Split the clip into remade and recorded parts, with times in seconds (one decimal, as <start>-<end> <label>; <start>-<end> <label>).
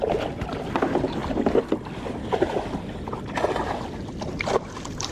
0.0-5.1 recorded